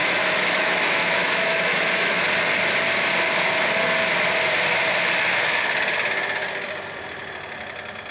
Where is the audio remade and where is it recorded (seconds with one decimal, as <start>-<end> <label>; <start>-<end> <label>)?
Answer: 0.0-2.2 remade; 2.2-8.1 recorded